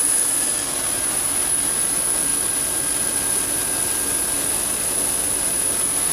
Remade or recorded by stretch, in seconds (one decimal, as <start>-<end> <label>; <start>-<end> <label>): 0.0-6.1 recorded